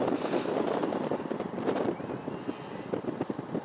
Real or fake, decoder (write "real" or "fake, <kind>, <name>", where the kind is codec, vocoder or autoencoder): real